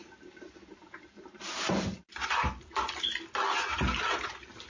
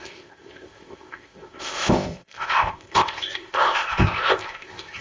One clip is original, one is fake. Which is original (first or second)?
first